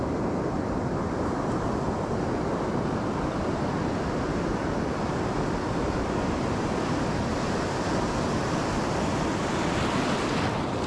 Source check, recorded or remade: recorded